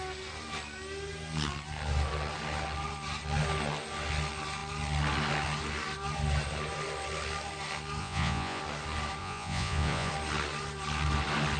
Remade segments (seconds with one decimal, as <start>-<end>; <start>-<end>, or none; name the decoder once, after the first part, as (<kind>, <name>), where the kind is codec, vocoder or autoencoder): 8.0-8.6 (vocoder, Vocos); 9.2-10.1